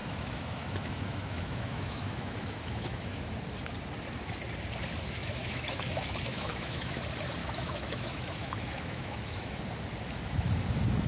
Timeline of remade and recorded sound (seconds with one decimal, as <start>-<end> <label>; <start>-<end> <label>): 0.0-3.2 remade; 3.2-5.2 recorded; 5.2-7.0 remade; 7.0-7.4 recorded; 7.4-9.6 remade; 9.6-11.1 recorded